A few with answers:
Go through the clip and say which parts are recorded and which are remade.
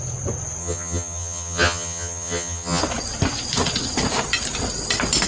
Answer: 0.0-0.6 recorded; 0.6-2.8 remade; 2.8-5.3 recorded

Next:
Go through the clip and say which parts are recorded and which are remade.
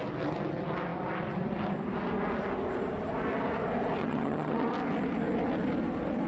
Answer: 0.0-4.0 recorded; 4.0-4.7 remade; 4.7-6.3 recorded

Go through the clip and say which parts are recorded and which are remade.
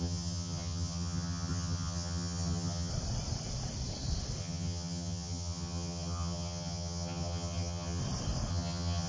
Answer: 0.0-2.9 remade; 2.9-4.4 recorded; 4.4-8.0 remade; 8.0-8.5 recorded; 8.5-9.1 remade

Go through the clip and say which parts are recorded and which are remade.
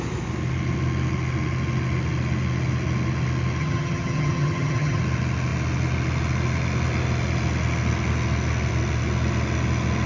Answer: 0.0-3.6 recorded; 3.6-5.0 remade; 5.0-10.1 recorded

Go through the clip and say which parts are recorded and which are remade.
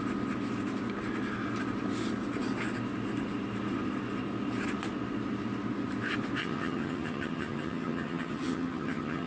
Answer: 0.0-6.4 recorded; 6.4-9.3 remade